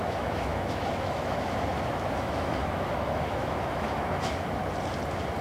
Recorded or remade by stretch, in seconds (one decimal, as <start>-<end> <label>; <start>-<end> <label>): 0.0-4.6 remade; 4.6-5.4 recorded